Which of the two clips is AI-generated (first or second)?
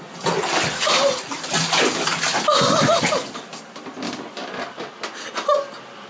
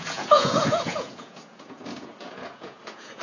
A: second